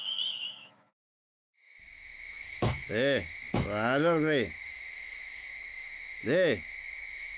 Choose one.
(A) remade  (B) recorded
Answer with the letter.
A